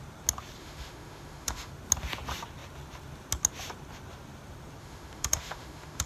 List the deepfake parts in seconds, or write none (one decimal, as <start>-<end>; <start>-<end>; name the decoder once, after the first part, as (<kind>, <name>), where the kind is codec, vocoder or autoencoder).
0.6-1.7 (autoencoder, DAC-VAE); 4.8-6.1